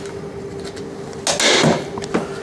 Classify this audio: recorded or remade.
recorded